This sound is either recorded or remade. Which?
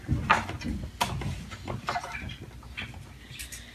recorded